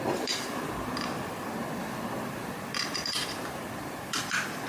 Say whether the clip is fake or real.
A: fake